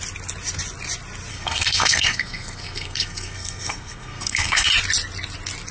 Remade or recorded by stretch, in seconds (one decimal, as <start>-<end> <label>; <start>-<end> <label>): 0.0-1.3 recorded; 1.3-4.7 remade; 4.7-5.7 recorded